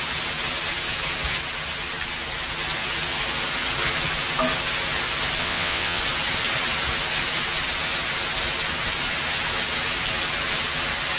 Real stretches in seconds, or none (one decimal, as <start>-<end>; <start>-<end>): 0.0-5.4; 6.0-11.2